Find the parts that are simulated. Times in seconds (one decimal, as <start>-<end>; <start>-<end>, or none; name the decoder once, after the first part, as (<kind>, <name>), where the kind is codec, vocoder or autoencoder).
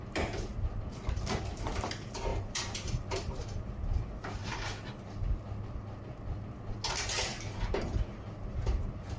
0.0-0.5 (vocoder, BigVGAN v2); 1.1-4.4; 6.7-9.2